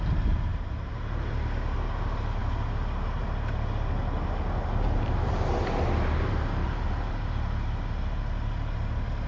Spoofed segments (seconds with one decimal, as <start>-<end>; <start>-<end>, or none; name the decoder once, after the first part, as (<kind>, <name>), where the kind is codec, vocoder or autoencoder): 0.5-1.3 (vocoder, BigVGAN v2); 6.6-7.3